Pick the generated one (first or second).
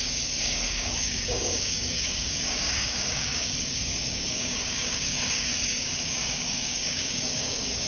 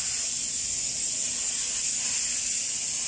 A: first